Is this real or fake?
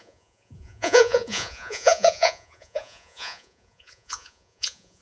fake